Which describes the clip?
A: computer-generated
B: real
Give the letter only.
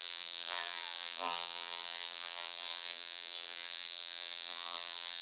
A